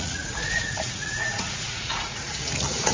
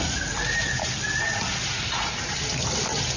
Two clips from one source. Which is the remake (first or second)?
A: first